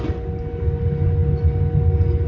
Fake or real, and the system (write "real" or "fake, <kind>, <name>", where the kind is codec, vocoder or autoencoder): real